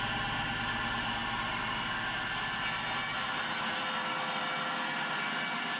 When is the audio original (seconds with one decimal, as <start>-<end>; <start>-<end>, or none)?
0.0-5.8